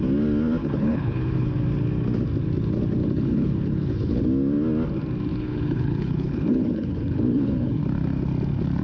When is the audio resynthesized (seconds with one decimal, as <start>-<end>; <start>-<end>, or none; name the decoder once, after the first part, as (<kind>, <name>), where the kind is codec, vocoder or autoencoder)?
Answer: 0.6-1.5 (codec, HILCodec); 3.0-4.2; 5.3-7.8